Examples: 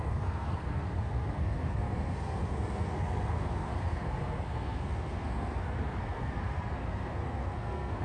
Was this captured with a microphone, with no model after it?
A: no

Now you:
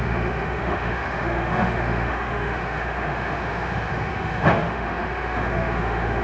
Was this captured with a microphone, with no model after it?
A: no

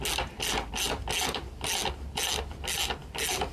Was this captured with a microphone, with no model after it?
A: yes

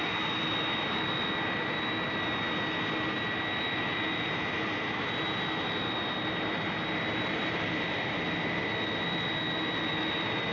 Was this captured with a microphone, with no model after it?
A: yes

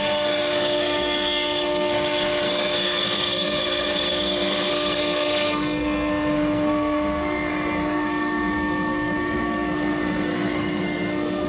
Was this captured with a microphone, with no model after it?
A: no